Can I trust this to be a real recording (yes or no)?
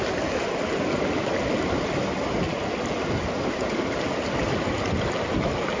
yes